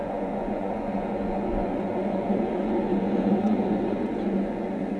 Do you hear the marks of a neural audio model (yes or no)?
yes